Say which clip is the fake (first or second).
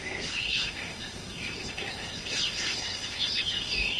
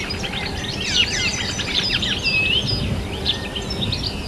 first